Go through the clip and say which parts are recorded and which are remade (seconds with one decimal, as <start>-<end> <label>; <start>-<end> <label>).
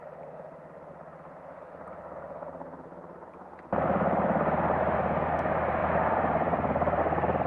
0.0-5.8 recorded; 5.8-7.0 remade; 7.0-7.5 recorded